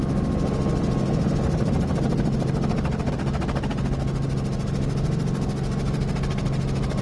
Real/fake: real